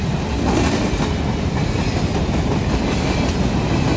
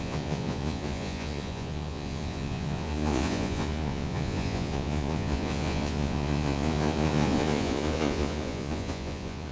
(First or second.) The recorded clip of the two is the first